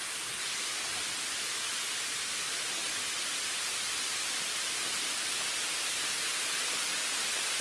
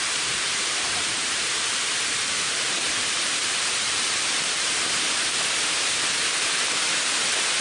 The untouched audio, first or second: first